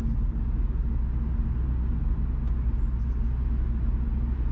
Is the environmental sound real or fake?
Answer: real